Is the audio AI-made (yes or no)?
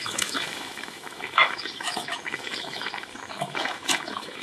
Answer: yes